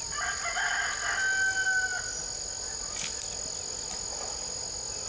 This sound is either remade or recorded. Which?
recorded